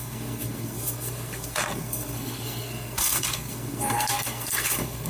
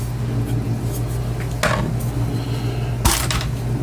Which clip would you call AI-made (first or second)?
first